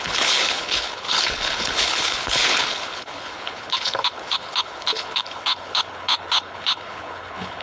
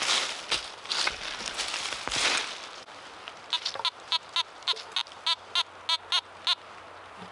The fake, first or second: first